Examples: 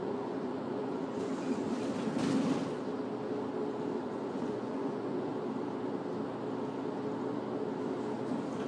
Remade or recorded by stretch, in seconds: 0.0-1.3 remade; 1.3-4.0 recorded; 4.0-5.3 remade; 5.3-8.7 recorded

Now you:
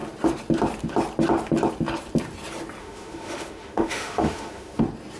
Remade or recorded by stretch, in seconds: 0.0-2.8 recorded; 2.8-4.8 remade; 4.8-5.2 recorded

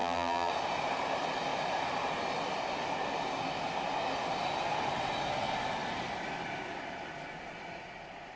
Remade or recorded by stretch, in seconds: 0.0-0.5 remade; 0.5-8.4 recorded

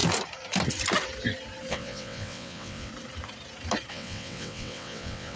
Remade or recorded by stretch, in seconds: 0.0-1.7 recorded; 1.7-2.9 remade; 2.9-3.9 recorded; 3.9-5.4 remade